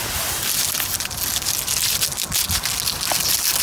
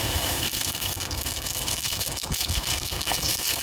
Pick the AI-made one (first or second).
second